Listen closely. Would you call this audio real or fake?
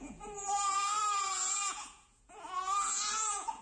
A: fake